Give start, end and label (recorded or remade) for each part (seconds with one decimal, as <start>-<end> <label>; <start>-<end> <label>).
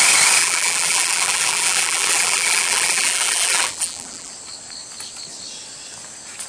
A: 0.0-0.4 recorded; 0.4-4.3 remade; 4.3-6.5 recorded